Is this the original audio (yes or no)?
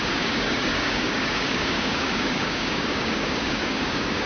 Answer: no